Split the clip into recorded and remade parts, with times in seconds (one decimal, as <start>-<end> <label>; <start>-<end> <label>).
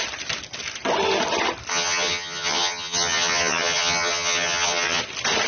0.0-1.7 recorded; 1.7-5.0 remade; 5.0-5.5 recorded